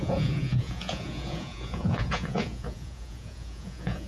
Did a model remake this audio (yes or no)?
yes